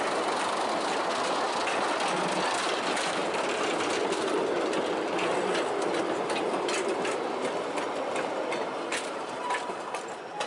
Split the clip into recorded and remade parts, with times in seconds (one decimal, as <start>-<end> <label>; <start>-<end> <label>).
0.0-10.5 recorded